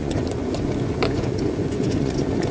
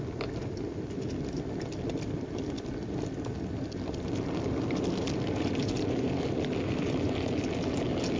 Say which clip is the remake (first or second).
first